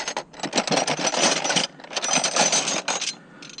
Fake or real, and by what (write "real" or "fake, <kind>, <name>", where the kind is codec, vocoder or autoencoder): real